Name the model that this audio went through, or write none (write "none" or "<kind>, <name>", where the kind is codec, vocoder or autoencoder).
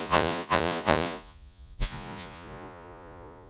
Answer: vocoder, Vocos